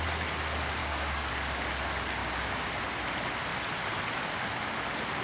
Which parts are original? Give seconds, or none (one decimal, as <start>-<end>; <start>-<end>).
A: 0.0-0.8; 1.3-2.2; 2.7-5.2